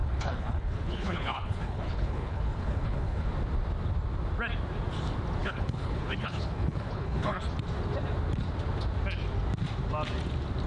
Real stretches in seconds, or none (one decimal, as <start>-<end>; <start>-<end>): 3.3-5.4; 7.4-10.7